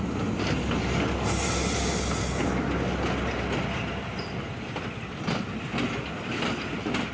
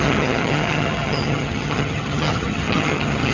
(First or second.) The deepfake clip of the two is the second